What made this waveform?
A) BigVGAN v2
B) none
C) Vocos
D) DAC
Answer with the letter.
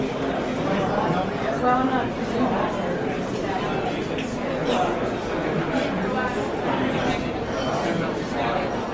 B